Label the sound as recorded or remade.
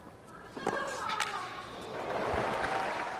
remade